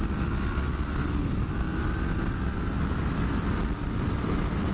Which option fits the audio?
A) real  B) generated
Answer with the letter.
A